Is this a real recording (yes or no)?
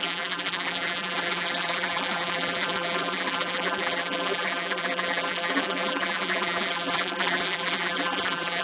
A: no